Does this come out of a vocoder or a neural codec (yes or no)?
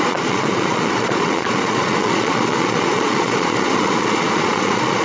yes